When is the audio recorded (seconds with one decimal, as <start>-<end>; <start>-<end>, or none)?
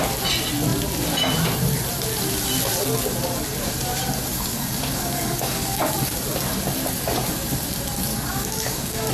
0.0-4.3; 5.9-8.1